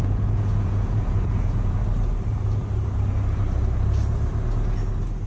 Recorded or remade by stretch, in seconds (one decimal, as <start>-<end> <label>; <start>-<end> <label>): 0.0-1.8 remade; 1.8-5.3 recorded